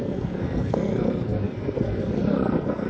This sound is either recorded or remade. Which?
remade